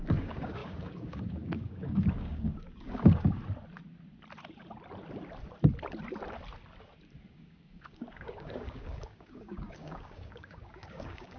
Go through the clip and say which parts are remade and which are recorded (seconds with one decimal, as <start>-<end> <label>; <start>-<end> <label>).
0.0-3.4 remade; 3.4-7.3 recorded; 7.3-11.4 remade